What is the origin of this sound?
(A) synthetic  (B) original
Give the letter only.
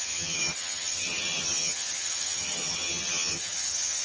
A